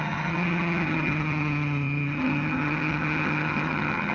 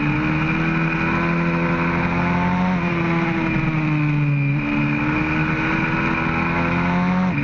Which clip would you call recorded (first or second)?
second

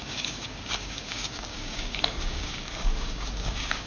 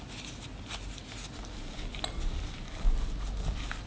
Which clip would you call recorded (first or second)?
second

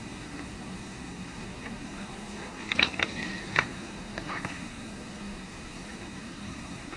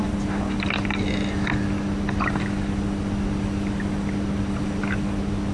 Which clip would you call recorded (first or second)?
second